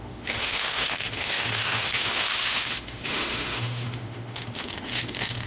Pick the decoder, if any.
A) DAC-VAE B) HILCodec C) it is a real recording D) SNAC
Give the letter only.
A